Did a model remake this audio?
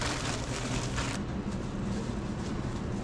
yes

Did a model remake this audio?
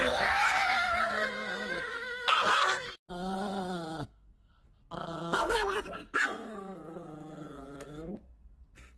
yes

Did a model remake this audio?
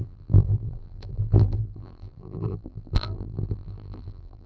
yes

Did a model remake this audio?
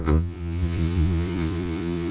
yes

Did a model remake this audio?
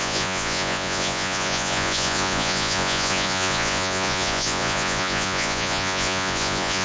yes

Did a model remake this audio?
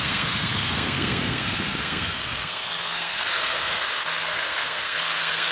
yes